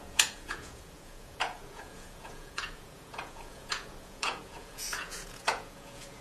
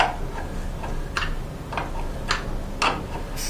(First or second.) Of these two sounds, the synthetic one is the first